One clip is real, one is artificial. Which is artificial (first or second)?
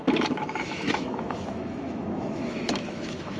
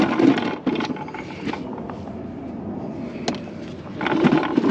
first